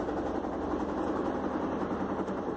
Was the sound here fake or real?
fake